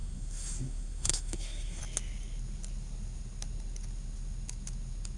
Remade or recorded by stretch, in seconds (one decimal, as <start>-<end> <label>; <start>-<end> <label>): 0.0-1.8 remade; 1.8-5.2 recorded